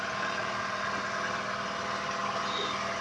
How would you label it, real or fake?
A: real